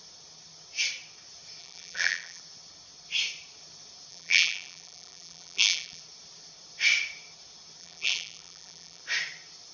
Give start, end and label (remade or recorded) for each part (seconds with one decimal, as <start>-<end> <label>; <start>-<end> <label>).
0.0-1.6 recorded; 1.6-2.4 remade; 2.4-4.1 recorded; 4.1-6.0 remade; 6.0-7.8 recorded; 7.8-9.0 remade; 9.0-9.7 recorded